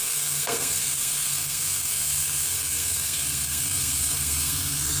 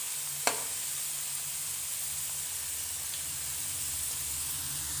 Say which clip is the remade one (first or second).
first